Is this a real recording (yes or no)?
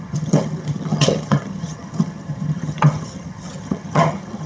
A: no